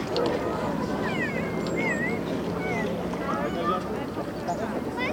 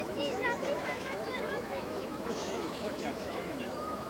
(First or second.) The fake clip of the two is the second